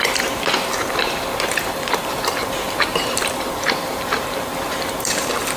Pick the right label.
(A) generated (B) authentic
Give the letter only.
A